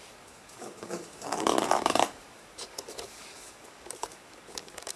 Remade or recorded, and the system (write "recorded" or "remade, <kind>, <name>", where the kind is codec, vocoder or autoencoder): remade, codec, DAC